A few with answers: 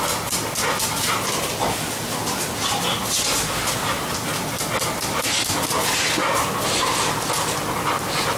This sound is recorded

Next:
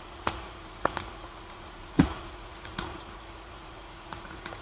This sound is remade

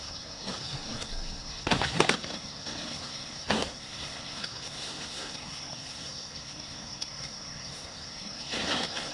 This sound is remade